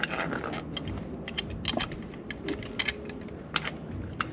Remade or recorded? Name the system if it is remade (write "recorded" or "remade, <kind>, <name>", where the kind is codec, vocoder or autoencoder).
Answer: recorded